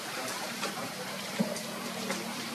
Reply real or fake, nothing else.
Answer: fake